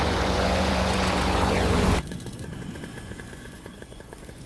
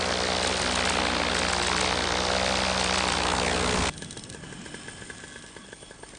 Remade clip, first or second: first